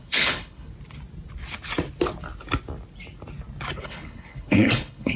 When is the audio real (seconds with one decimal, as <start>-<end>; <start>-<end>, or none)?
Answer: 0.7-3.8